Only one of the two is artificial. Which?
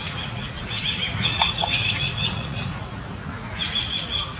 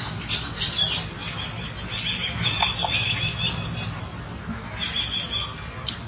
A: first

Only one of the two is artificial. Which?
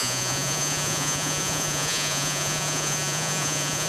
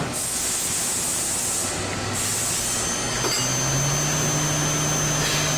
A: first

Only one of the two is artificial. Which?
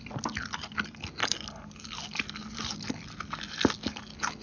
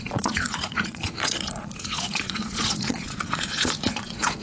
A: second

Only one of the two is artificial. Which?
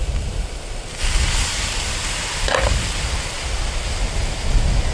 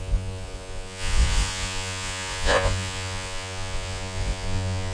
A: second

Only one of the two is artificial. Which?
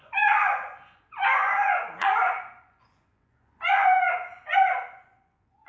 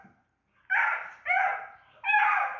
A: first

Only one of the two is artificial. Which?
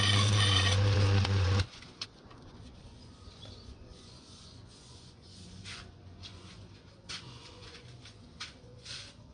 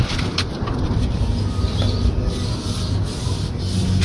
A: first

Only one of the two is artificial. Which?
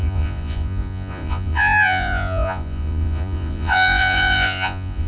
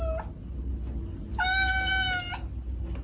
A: first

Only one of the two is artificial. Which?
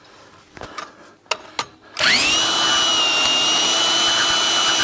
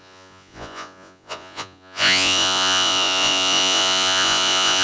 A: second